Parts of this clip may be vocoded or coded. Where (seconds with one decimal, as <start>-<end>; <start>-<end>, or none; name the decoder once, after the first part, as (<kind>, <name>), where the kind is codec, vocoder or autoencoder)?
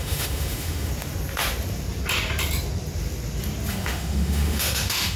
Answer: 0.0-0.9 (autoencoder, DAC-VAE); 3.7-5.2